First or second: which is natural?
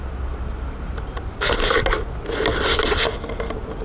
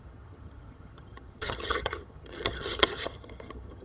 first